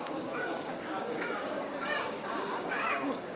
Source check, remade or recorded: remade